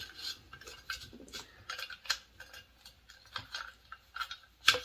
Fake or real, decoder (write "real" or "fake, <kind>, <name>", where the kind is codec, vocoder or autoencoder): real